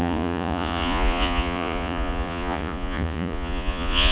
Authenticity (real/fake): fake